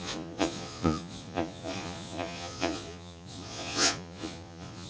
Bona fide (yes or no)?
no